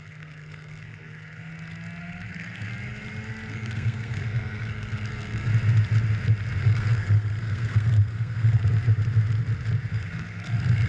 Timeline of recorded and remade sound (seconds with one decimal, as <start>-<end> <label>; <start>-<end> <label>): 0.0-1.5 remade; 1.5-2.0 recorded; 2.0-2.7 remade; 2.7-3.5 recorded; 3.5-5.5 remade; 5.5-6.6 recorded; 6.6-8.6 remade; 8.6-9.9 recorded; 9.9-10.9 remade